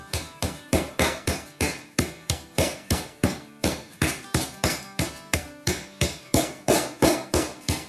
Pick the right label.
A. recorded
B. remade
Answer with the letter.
B